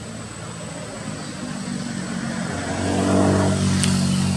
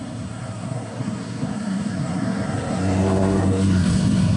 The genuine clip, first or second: first